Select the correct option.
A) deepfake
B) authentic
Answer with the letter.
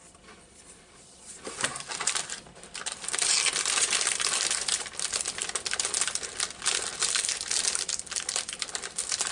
A